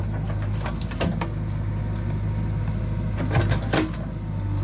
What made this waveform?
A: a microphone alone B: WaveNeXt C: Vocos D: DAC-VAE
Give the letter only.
A